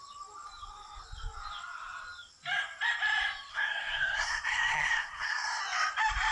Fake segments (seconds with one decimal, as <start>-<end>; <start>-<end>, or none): 3.5-5.6